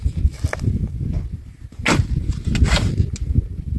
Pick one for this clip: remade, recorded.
recorded